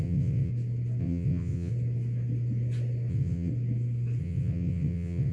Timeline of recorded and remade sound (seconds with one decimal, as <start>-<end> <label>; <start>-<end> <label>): 0.0-0.5 remade; 0.5-1.0 recorded; 1.0-1.7 remade; 1.7-3.1 recorded; 3.1-3.5 remade; 3.5-4.2 recorded; 4.2-5.3 remade